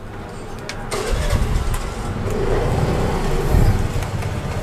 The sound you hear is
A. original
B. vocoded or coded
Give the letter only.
A